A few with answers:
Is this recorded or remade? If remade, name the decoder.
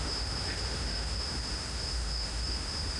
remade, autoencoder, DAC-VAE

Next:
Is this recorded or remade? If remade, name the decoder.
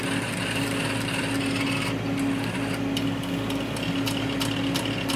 remade, vocoder, BigVGAN v2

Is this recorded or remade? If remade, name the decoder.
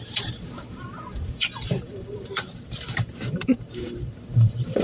remade, vocoder, BigVGAN v2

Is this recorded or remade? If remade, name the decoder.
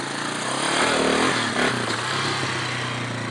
recorded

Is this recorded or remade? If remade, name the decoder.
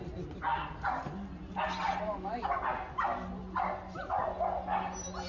recorded